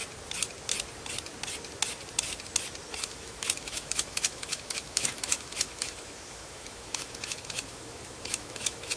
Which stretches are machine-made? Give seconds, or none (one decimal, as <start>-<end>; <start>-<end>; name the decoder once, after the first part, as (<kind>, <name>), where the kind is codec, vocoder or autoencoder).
3.0-9.0 (autoencoder, DAC-VAE)